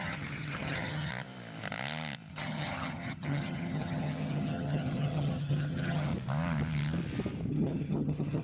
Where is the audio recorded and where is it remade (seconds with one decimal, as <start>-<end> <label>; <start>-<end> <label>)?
0.0-1.1 remade; 1.1-2.3 recorded; 2.3-6.1 remade; 6.1-7.5 recorded; 7.5-8.4 remade